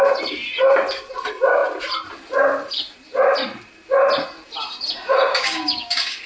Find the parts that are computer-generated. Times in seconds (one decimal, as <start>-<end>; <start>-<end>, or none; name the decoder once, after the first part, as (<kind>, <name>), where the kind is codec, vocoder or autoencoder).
5.3-6.3 (codec, DAC)

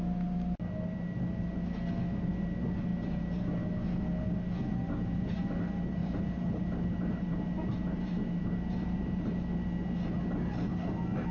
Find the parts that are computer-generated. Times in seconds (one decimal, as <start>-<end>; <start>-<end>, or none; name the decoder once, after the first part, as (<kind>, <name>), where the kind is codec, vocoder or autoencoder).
2.9-3.5 (vocoder, BigVGAN v2); 4.7-5.4; 6.0-9.3

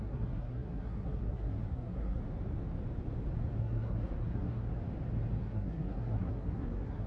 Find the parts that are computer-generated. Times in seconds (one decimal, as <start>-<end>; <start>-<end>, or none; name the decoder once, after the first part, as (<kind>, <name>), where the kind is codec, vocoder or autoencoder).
0.0-2.2 (codec, SNAC); 3.6-4.7; 5.4-7.1

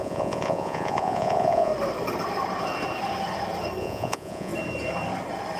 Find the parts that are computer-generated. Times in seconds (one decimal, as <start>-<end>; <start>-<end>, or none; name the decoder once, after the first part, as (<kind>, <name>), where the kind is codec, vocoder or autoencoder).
0.0-1.7 (vocoder, Vocos); 3.8-4.5

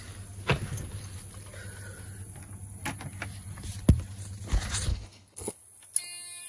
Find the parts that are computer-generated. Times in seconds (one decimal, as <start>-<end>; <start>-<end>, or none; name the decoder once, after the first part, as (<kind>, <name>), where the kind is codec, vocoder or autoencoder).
4.9-5.5 (codec, HILCodec)

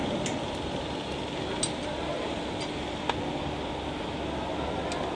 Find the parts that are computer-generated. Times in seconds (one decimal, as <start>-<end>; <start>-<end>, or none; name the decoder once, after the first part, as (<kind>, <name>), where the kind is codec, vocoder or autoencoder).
none